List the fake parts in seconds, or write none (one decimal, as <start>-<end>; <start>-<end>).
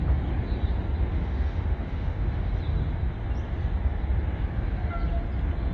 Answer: 1.1-2.5